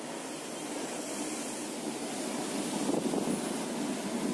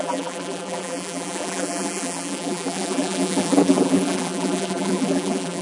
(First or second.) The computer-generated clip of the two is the second